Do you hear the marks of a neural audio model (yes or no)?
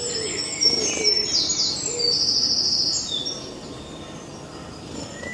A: no